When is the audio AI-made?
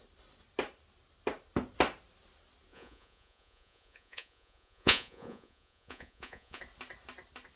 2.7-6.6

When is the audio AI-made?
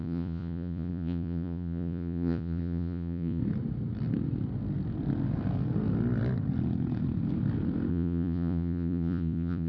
0.0-3.4; 7.9-9.7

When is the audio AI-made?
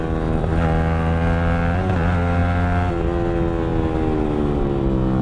none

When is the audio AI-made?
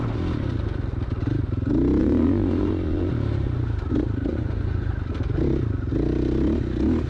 2.0-3.1; 4.3-4.9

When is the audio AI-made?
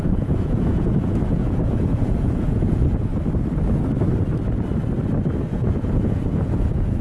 0.0-3.1; 5.5-7.0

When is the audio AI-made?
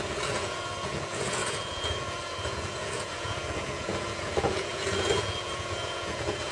0.0-6.5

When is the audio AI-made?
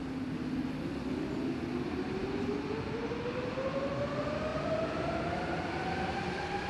none